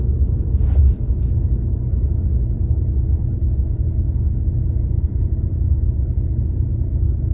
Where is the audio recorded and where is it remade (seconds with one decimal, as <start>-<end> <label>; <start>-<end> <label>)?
0.0-7.3 recorded

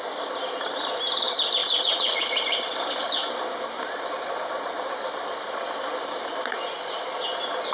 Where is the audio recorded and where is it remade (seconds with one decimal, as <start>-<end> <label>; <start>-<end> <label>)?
0.0-1.6 recorded; 1.6-4.9 remade; 4.9-5.9 recorded; 5.9-6.7 remade; 6.7-7.7 recorded

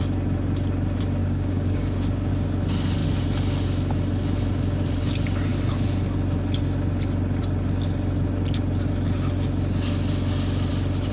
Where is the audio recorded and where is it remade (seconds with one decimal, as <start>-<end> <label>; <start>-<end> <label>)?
0.0-1.2 recorded; 1.2-2.3 remade; 2.3-11.1 recorded